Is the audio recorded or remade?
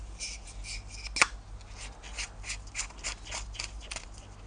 recorded